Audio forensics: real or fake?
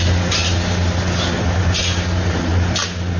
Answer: real